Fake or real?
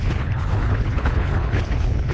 fake